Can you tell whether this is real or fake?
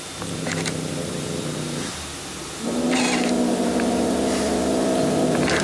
real